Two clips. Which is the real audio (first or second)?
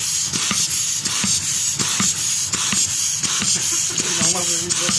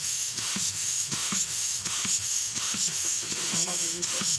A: first